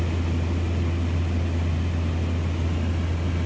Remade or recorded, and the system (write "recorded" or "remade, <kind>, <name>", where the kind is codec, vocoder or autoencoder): recorded